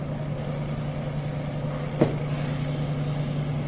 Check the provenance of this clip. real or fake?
real